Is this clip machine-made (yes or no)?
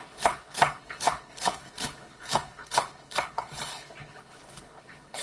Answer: yes